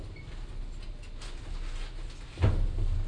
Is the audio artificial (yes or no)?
no